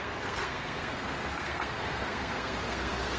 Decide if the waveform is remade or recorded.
remade